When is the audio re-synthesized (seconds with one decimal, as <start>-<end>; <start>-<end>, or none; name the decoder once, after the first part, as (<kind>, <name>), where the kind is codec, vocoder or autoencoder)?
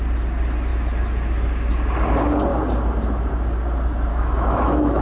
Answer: 0.7-1.7 (autoencoder, DAC-VAE); 4.1-5.0